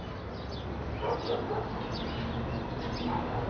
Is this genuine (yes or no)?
yes